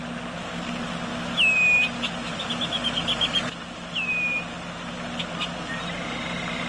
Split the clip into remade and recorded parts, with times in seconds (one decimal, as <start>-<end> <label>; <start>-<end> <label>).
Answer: 0.0-6.7 recorded